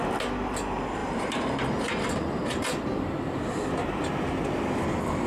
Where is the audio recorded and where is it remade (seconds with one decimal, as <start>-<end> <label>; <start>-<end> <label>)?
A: 0.0-1.0 recorded; 1.0-3.7 remade; 3.7-5.3 recorded

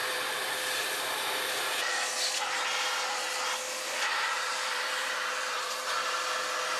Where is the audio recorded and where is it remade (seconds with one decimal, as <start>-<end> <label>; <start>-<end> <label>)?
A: 0.0-1.6 remade; 1.6-4.1 recorded; 4.1-5.8 remade; 5.8-6.8 recorded